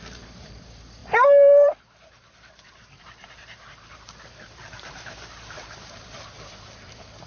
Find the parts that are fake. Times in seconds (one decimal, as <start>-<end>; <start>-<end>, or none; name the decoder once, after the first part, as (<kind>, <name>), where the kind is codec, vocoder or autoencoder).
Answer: 0.0-7.3 (vocoder, BigVGAN v2)